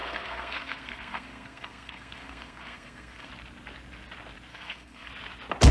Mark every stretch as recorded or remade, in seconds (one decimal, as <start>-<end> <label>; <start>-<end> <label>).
0.0-3.3 remade; 3.3-4.5 recorded; 4.5-5.1 remade; 5.1-5.7 recorded